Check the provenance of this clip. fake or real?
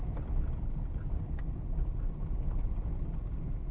real